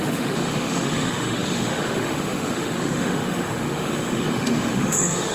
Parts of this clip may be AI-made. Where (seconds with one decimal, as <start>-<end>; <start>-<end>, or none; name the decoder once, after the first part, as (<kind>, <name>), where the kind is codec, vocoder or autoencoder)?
0.0-5.3 (autoencoder, DAC-VAE)